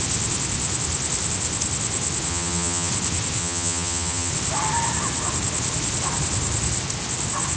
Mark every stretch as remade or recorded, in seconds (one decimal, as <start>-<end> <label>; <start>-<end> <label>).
0.0-2.3 recorded; 2.3-2.9 remade; 2.9-3.4 recorded; 3.4-4.3 remade; 4.3-7.6 recorded